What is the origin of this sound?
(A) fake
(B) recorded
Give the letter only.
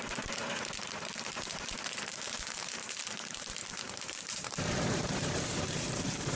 A